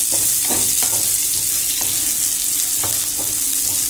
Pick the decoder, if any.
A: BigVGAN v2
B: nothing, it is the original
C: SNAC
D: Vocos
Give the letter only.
B